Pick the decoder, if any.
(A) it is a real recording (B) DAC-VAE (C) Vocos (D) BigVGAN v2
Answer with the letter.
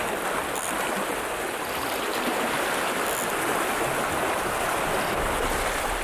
A